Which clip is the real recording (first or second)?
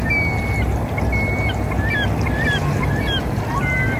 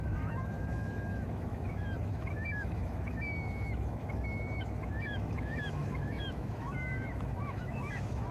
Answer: first